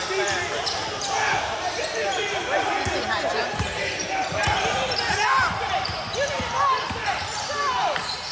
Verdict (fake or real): fake